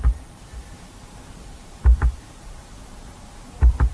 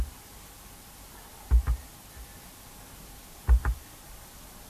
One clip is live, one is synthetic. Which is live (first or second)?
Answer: second